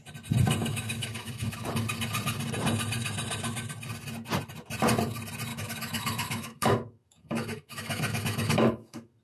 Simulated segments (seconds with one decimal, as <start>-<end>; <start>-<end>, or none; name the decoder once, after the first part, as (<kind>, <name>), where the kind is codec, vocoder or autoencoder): 0.6-1.7 (autoencoder, DAC-VAE); 5.5-9.2